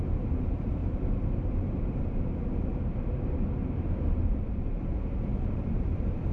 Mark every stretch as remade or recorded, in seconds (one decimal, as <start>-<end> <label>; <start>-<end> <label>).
0.0-0.8 remade; 0.8-4.5 recorded; 4.5-5.3 remade; 5.3-5.8 recorded; 5.8-6.3 remade